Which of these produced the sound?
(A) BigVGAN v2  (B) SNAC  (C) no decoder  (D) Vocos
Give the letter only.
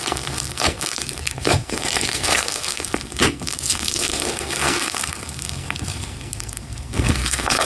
B